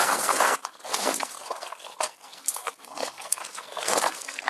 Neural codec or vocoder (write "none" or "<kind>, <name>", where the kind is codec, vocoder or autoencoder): codec, SNAC